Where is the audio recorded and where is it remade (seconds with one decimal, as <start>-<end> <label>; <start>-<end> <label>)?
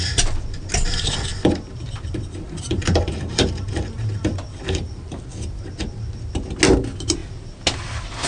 0.0-1.3 recorded; 1.3-5.6 remade; 5.6-8.3 recorded